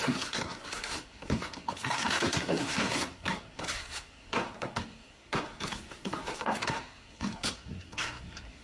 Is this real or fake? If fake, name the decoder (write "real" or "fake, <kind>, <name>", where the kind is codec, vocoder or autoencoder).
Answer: fake, codec, SNAC